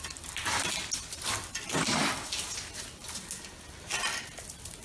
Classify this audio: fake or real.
real